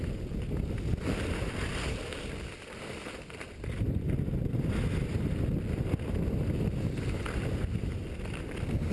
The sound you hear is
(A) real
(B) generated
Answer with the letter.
A